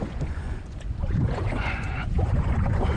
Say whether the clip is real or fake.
fake